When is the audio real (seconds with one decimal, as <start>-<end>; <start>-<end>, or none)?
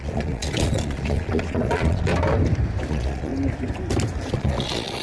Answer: 2.1-2.9; 3.3-4.3